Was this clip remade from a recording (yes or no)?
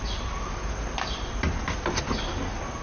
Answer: no